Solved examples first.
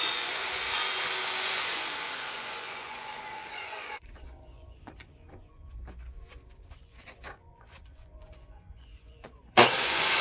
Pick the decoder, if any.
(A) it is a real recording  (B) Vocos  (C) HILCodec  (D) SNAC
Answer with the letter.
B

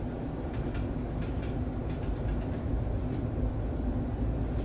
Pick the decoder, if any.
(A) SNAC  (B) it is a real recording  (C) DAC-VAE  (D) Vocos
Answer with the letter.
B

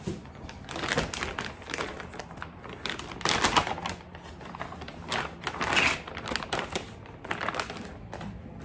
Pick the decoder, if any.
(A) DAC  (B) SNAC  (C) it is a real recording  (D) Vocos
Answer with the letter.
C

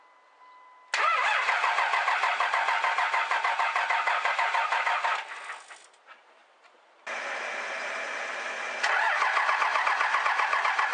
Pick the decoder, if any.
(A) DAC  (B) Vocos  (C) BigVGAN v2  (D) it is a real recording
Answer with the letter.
D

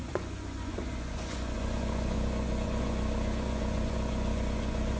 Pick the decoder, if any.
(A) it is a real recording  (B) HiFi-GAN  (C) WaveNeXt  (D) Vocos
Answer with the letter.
D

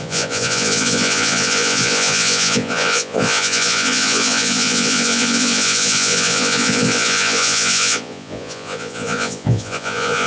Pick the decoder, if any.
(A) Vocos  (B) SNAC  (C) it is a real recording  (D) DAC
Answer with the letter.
A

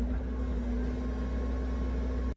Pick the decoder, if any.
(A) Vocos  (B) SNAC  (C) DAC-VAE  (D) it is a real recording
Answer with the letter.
D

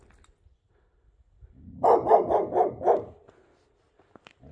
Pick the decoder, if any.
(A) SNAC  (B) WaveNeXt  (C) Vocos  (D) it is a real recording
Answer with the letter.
D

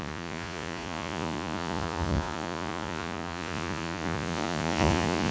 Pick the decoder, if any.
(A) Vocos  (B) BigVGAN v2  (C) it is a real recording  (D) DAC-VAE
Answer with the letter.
A